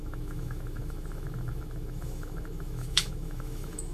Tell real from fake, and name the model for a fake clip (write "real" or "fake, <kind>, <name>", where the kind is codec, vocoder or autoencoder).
fake, autoencoder, DAC-VAE